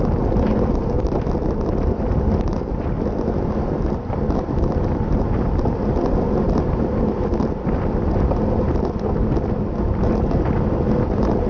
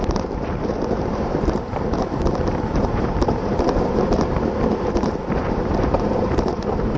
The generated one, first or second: second